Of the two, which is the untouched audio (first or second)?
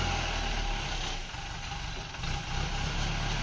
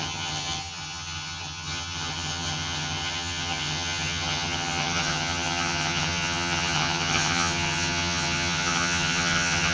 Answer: first